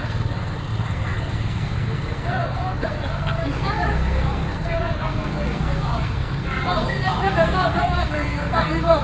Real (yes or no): no